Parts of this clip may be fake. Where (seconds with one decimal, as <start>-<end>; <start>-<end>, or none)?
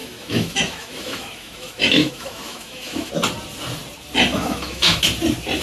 0.0-3.1; 4.3-5.0